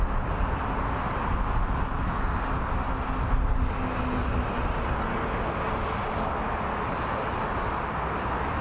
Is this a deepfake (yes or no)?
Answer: no